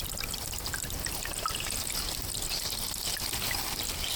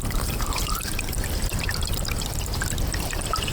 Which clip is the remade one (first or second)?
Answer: second